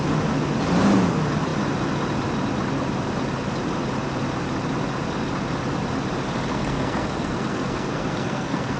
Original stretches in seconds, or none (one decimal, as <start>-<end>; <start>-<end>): 0.0-6.5